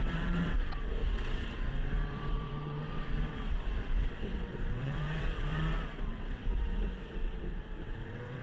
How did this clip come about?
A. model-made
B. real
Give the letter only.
A